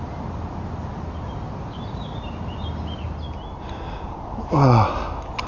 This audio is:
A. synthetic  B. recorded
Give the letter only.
B